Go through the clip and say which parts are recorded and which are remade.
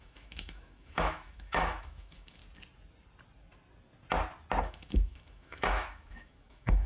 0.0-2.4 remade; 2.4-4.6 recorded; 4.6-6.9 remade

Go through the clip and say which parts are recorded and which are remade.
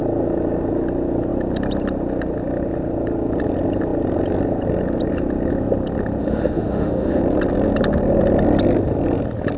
0.0-6.2 recorded; 6.2-7.2 remade; 7.2-9.6 recorded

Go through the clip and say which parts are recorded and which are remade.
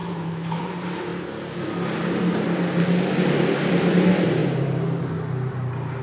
0.0-0.6 remade; 0.6-6.0 recorded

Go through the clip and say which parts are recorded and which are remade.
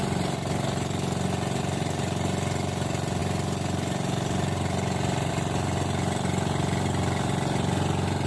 0.0-8.3 recorded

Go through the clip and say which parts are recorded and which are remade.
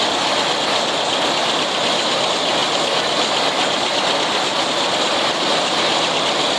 0.0-6.6 recorded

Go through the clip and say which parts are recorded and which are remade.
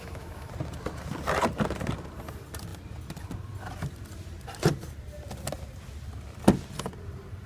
0.0-0.5 remade; 0.5-7.5 recorded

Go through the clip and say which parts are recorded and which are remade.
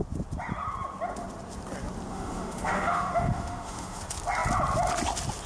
0.0-2.1 recorded; 2.1-4.0 remade; 4.0-5.5 recorded